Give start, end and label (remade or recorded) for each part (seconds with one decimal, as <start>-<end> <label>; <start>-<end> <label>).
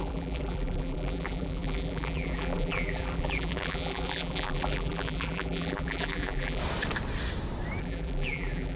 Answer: 0.0-6.6 remade; 6.6-7.8 recorded; 7.8-8.8 remade